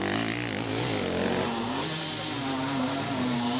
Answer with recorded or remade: recorded